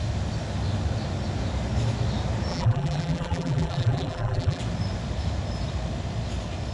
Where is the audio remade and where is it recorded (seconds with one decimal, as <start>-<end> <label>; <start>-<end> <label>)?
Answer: 0.0-2.5 recorded; 2.5-4.6 remade; 4.6-6.7 recorded